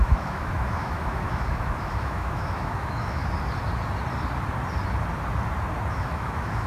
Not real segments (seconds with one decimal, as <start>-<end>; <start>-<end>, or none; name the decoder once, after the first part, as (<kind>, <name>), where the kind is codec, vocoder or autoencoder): 0.0-3.2 (autoencoder, DAC-VAE); 5.9-6.7

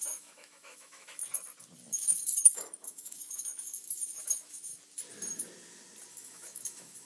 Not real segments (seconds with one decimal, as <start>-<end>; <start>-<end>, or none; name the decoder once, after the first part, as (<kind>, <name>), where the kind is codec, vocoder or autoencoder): 0.0-1.2 (autoencoder, DAC-VAE); 1.9-4.7; 6.1-7.0

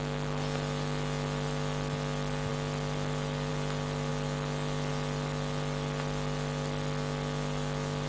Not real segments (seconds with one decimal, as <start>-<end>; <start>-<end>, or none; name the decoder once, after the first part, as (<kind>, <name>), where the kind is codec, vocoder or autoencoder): none

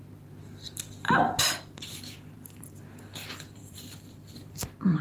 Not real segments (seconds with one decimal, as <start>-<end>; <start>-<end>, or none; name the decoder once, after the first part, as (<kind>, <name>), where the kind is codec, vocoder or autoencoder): 0.0-3.0 (vocoder, BigVGAN v2); 3.6-5.0

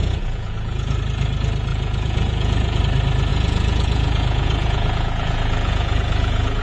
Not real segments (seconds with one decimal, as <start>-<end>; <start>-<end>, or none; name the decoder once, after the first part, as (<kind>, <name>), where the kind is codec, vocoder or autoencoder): 0.0-1.0 (vocoder, Vocos); 1.7-2.8; 3.3-6.6

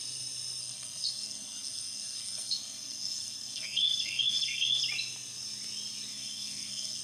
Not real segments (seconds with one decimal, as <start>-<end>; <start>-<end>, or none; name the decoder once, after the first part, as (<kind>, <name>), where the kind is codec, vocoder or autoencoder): 0.6-4.8 (codec, SNAC); 6.1-7.0

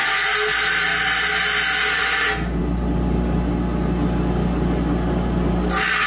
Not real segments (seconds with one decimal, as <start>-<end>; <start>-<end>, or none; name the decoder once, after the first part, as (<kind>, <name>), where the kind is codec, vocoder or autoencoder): 0.0-1.3 (vocoder, BigVGAN v2); 2.0-2.6

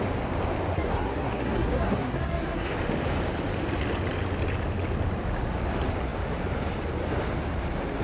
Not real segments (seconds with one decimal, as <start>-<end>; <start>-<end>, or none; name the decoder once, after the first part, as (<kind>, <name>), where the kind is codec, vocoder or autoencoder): 0.7-2.7 (codec, SNAC)